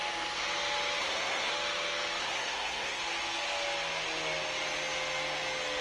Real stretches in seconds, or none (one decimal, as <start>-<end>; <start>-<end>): 0.0-1.0; 1.5-2.2; 3.0-5.8